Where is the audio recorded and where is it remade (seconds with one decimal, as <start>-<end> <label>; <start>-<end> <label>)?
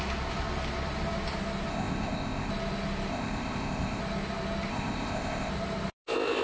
0.0-1.7 recorded; 1.7-2.5 remade; 2.5-3.1 recorded; 3.1-4.0 remade; 4.0-4.7 recorded; 4.7-5.5 remade; 5.5-6.4 recorded